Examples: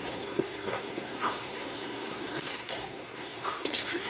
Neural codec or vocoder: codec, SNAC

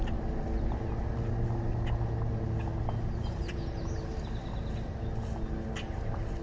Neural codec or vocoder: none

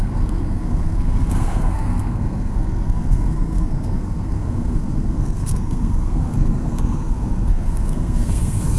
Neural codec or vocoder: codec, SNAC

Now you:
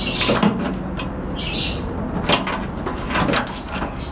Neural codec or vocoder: none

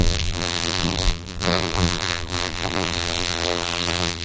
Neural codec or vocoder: vocoder, BigVGAN v2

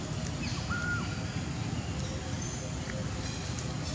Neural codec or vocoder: none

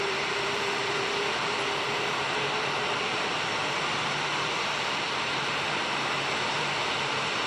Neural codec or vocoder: vocoder, BigVGAN v2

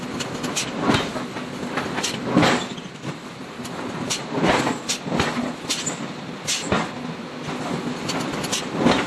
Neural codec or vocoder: none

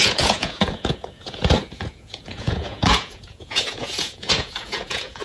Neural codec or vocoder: vocoder, Vocos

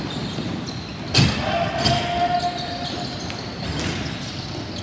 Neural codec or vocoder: none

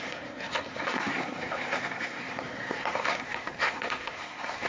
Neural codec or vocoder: codec, SNAC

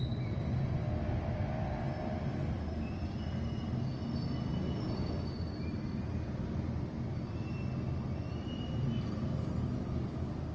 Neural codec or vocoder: none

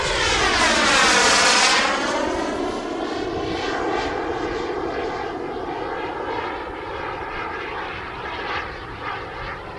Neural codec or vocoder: none